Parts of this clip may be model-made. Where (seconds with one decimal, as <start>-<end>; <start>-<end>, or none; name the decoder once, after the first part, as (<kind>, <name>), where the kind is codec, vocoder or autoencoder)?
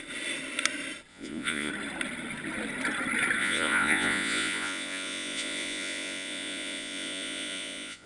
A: 1.1-1.7 (vocoder, Vocos); 3.4-8.1